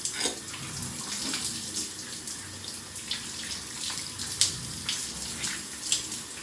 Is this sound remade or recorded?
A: recorded